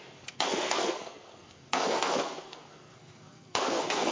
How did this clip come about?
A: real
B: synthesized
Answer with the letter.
B